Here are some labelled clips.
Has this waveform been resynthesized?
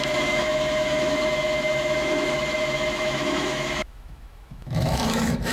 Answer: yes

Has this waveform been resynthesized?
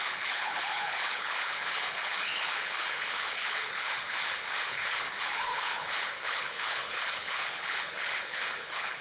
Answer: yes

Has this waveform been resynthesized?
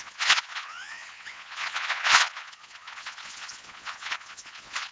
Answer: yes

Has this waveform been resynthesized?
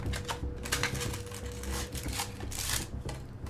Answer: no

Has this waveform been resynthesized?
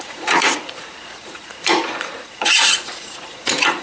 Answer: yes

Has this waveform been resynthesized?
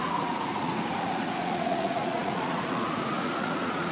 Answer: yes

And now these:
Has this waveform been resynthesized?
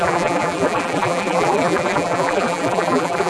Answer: yes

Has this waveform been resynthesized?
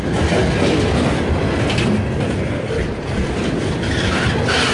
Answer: no